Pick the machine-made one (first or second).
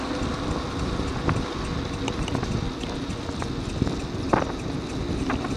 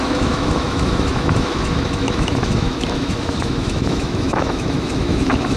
second